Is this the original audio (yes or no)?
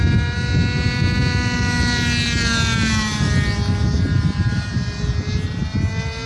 yes